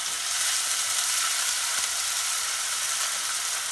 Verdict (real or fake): real